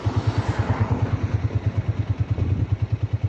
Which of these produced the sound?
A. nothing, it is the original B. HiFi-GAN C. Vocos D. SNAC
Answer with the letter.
A